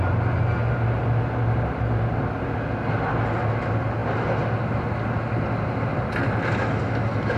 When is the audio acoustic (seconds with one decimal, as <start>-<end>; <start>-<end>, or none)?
0.0-7.4